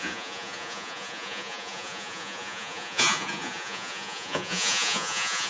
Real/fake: fake